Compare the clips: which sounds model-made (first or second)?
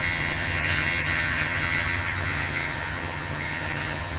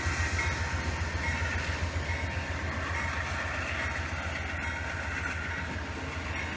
first